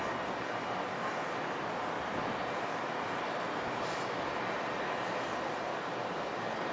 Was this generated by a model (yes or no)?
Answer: no